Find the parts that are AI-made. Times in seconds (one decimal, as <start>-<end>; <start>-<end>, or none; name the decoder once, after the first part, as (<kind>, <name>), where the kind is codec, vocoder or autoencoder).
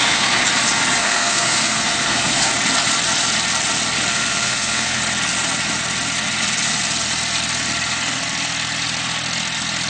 0.0-0.4 (codec, SNAC); 1.0-2.5; 4.1-5.0